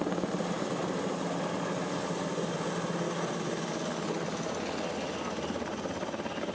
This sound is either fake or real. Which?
real